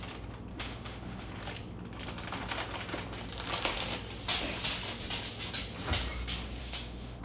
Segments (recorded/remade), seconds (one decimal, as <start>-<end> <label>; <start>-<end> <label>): 0.0-0.5 recorded; 0.5-1.3 remade; 1.3-6.6 recorded; 6.6-7.2 remade